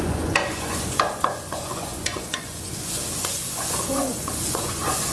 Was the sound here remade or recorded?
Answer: remade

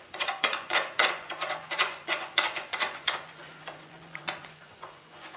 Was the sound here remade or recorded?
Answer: remade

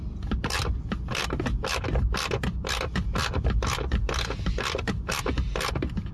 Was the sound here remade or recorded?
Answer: recorded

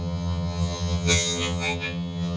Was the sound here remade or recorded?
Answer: remade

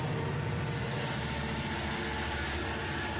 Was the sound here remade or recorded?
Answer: recorded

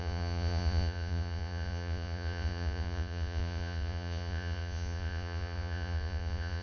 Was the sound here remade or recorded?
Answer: remade